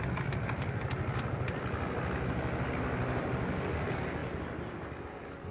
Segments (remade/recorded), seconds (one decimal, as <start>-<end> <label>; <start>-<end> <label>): 0.0-5.5 recorded